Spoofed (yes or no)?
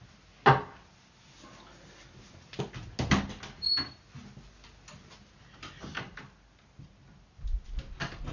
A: no